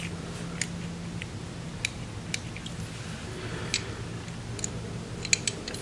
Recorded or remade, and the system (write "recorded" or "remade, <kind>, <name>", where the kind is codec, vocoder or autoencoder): recorded